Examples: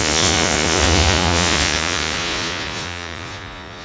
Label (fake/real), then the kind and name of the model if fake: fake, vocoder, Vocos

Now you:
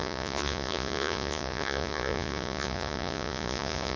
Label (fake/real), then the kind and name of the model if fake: fake, vocoder, Vocos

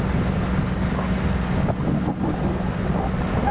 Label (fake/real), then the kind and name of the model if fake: real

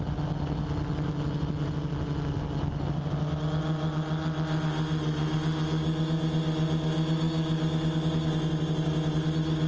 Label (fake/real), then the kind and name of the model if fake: real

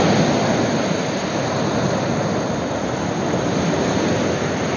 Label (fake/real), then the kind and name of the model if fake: real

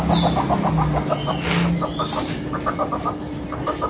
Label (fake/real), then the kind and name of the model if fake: real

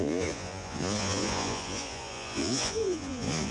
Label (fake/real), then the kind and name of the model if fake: fake, vocoder, Vocos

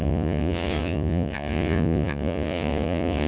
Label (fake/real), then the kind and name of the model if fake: fake, vocoder, Vocos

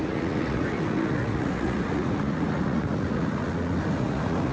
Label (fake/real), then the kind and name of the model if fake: fake, vocoder, Vocos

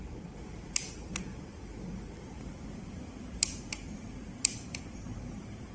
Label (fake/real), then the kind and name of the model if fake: real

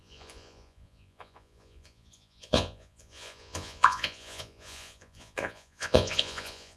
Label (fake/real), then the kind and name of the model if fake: fake, vocoder, Vocos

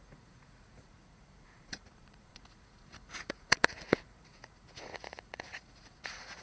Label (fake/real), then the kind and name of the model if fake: fake, vocoder, Vocos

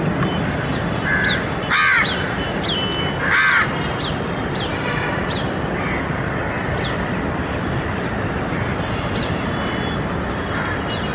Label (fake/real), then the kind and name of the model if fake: real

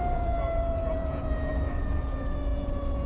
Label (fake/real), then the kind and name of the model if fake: fake, vocoder, Vocos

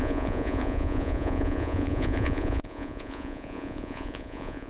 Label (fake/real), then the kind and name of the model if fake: fake, vocoder, Vocos